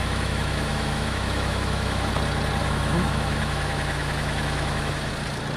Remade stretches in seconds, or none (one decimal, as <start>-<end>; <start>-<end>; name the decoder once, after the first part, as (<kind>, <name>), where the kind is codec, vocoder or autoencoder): 0.0-2.1 (autoencoder, DAC-VAE); 2.6-5.1